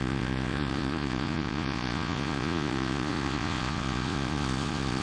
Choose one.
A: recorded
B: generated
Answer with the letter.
B